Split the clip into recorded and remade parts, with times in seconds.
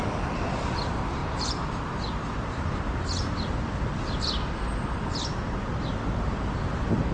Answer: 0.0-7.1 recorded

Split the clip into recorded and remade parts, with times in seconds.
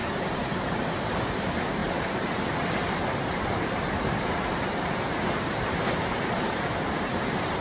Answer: 0.0-7.6 remade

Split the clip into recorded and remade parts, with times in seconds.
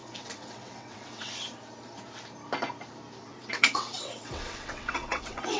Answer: 0.0-1.3 remade; 1.3-3.3 recorded; 3.3-5.6 remade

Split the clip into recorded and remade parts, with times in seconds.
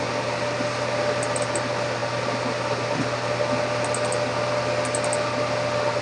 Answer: 0.0-6.0 recorded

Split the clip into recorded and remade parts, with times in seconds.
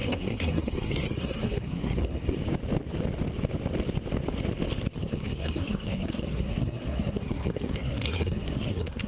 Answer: 0.0-2.4 remade; 2.4-5.0 recorded; 5.0-9.1 remade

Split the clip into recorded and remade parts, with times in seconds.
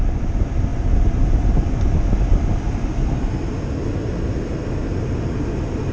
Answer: 0.0-5.9 recorded